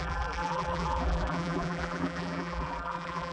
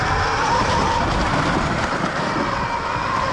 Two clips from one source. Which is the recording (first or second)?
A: second